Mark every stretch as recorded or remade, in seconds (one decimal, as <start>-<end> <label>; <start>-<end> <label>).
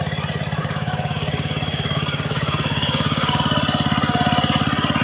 0.0-0.6 recorded; 0.6-3.4 remade; 3.4-5.0 recorded